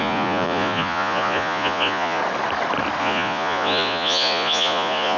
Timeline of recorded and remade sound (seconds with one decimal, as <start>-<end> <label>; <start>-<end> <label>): 0.0-2.2 remade; 2.2-3.0 recorded; 3.0-5.2 remade